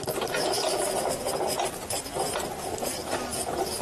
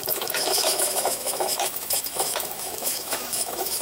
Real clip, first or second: first